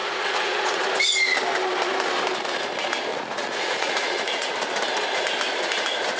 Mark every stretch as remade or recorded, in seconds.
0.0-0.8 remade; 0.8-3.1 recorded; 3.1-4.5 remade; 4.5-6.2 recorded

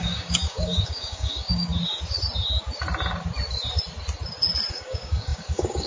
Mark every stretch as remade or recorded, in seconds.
0.0-1.7 remade; 1.7-4.7 recorded; 4.7-5.9 remade

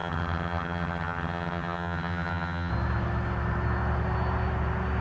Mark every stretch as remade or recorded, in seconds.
0.0-2.7 remade; 2.7-5.0 recorded